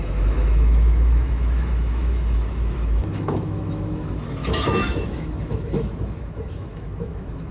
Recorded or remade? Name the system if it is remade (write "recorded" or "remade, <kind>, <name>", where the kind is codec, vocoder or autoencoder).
remade, autoencoder, DAC-VAE